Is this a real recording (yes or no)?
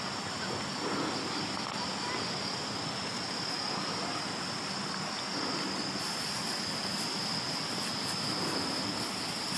yes